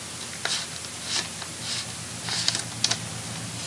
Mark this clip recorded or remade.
recorded